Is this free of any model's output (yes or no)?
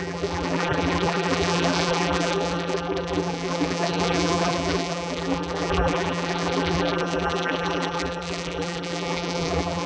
no